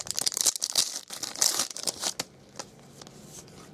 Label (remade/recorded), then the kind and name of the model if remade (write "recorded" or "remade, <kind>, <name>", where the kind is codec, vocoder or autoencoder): recorded